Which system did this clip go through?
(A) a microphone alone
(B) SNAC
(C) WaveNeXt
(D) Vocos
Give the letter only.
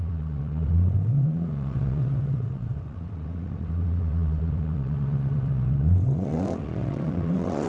C